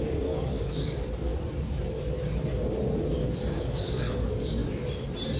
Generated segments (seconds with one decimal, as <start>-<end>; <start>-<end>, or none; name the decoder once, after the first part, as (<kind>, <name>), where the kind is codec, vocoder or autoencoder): 0.0-1.3 (codec, DAC); 3.6-4.6